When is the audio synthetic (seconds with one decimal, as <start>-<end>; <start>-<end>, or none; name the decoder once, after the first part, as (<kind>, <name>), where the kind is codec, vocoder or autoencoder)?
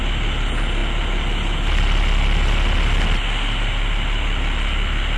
none